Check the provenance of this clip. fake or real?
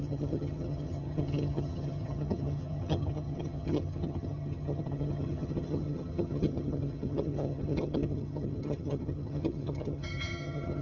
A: fake